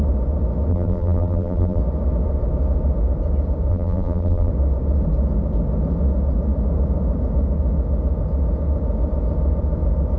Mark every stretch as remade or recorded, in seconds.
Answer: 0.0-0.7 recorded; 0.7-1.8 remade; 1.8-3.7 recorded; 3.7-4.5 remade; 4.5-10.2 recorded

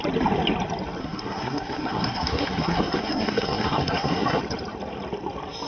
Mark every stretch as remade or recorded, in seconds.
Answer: 0.0-1.0 recorded; 1.0-4.4 remade; 4.4-5.7 recorded

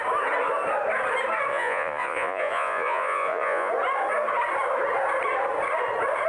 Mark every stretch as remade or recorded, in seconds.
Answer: 0.0-1.5 recorded; 1.5-3.7 remade; 3.7-6.3 recorded

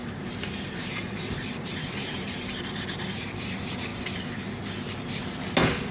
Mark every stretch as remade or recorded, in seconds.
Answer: 0.0-3.5 remade; 3.5-5.9 recorded

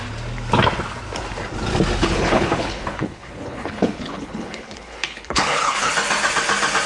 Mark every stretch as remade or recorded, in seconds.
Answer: 0.0-2.0 recorded; 2.0-5.9 remade; 5.9-6.9 recorded